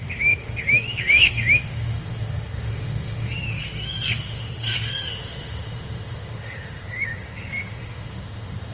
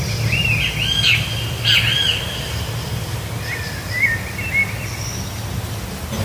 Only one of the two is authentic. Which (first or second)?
second